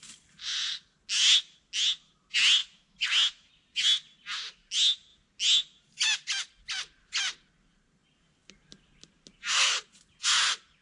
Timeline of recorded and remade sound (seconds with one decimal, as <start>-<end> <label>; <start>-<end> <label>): 0.0-2.6 recorded; 2.6-3.5 remade; 3.5-10.8 recorded